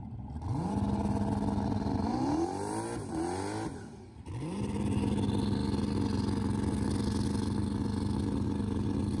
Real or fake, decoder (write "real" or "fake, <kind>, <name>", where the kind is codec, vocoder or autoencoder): real